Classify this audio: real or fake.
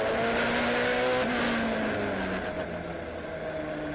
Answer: real